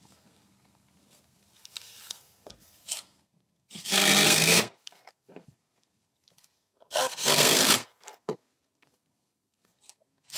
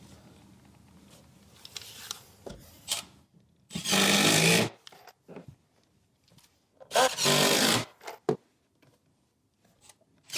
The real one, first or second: second